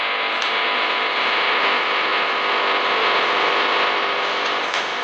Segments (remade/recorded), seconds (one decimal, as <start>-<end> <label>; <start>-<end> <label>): 0.0-5.0 recorded